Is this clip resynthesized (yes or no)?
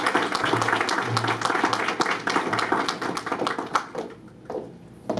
no